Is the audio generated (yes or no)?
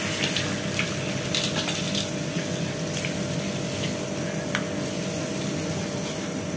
no